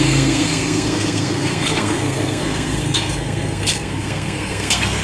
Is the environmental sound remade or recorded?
remade